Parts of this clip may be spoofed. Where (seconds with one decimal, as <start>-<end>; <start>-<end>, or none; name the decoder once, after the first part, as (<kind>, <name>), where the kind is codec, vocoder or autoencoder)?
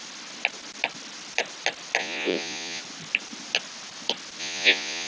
2.0-2.8 (vocoder, Vocos); 4.4-5.1